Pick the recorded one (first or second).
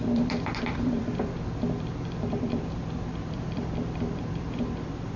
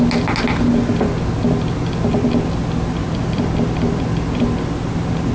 second